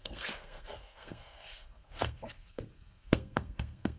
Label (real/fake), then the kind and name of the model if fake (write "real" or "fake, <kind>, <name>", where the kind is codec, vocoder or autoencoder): fake, codec, SNAC